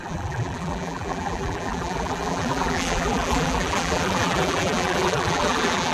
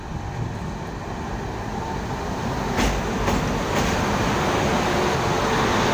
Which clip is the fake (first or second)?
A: first